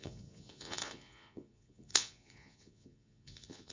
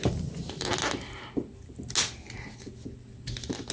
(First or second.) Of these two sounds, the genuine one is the second